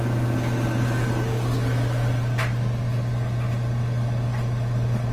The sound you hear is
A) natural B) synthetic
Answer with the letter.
A